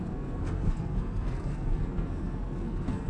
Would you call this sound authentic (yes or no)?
no